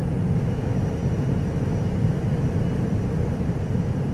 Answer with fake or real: real